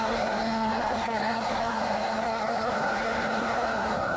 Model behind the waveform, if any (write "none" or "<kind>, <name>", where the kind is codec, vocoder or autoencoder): codec, SNAC